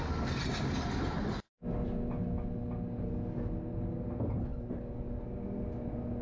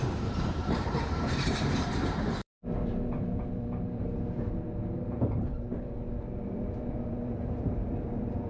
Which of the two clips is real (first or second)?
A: first